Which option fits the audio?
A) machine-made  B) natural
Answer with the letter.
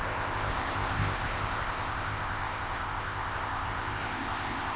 A